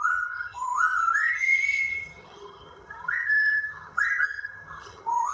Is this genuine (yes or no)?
no